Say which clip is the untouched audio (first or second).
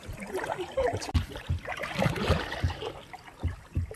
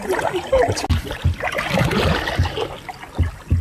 second